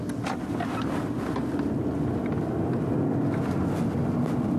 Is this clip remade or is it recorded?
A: recorded